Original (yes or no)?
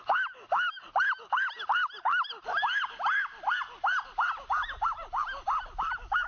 yes